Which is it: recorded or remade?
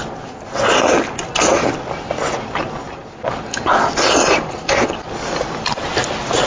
recorded